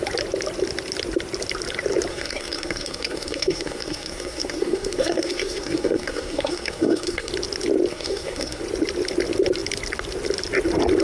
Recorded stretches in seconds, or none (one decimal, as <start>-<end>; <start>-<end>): 0.0-2.1; 7.3-7.9; 8.6-11.0